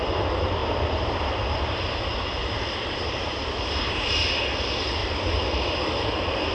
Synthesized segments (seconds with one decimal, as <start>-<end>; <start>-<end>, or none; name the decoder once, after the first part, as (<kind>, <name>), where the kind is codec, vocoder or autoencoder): 0.6-1.1 (vocoder, BigVGAN v2); 2.4-4.1; 5.0-5.8